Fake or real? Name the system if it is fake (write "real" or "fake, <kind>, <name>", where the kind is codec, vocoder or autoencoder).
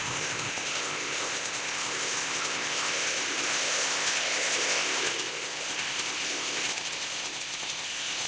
fake, codec, ZipCodec